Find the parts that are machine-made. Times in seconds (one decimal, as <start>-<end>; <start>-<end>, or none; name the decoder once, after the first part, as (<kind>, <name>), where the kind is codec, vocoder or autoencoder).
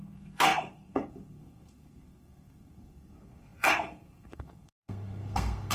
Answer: 0.0-5.7 (codec, SNAC)